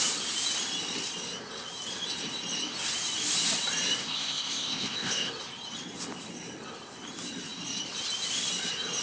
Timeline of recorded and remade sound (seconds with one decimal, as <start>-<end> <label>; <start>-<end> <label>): 0.0-4.0 recorded; 4.0-5.3 remade; 5.3-9.0 recorded